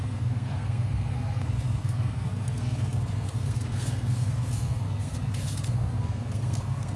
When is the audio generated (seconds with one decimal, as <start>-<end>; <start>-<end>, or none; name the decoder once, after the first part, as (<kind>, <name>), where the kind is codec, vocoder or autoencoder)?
0.0-7.0 (codec, SNAC)